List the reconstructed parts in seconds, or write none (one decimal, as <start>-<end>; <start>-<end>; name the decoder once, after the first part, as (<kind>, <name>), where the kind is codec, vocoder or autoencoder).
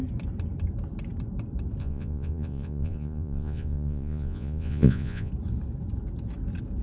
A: 1.8-5.3 (vocoder, Vocos)